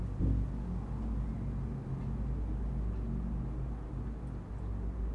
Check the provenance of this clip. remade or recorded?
recorded